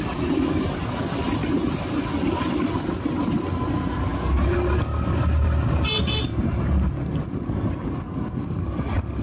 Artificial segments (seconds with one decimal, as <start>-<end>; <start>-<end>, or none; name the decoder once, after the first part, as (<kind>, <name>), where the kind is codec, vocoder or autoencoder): none